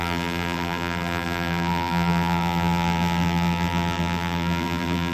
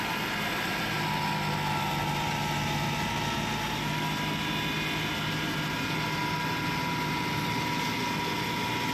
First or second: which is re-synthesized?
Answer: first